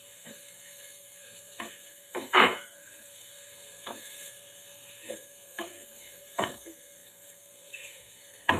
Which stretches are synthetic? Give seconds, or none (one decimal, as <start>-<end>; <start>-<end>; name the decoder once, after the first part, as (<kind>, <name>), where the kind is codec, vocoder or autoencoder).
0.0-8.6 (codec, SNAC)